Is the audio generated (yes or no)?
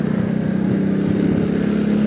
no